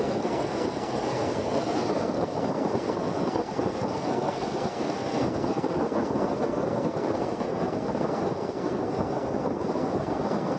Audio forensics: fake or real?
fake